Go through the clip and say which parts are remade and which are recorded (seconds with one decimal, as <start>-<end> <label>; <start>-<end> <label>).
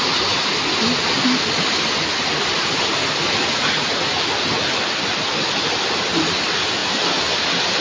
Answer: 0.0-3.5 recorded; 3.5-4.1 remade; 4.1-7.8 recorded